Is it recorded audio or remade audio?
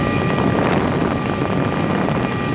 recorded